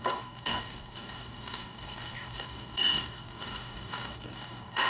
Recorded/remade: remade